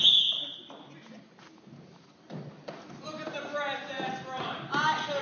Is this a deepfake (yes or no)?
no